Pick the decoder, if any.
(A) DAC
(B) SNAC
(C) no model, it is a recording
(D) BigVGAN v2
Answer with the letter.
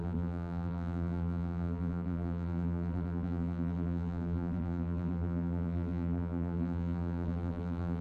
D